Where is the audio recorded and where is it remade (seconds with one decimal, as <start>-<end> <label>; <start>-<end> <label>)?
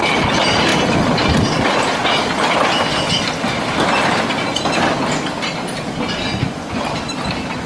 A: 0.0-6.3 recorded; 6.3-6.8 remade; 6.8-7.7 recorded